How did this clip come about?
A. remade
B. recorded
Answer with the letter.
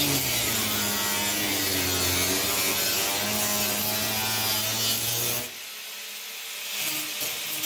B